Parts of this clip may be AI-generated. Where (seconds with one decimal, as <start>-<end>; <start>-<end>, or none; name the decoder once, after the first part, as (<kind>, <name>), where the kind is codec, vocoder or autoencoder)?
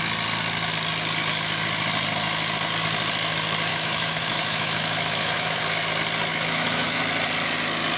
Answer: 3.7-5.6 (autoencoder, DAC-VAE); 6.3-7.0